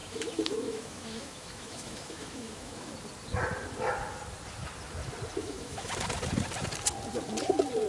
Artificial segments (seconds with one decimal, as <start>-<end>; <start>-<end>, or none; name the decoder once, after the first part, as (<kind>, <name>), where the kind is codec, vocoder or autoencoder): 0.0-2.9 (autoencoder, DAC-VAE); 5.4-5.9